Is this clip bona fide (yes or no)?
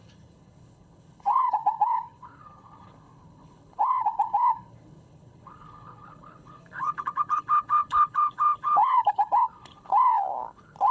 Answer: no